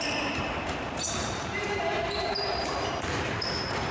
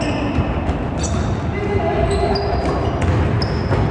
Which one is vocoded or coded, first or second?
first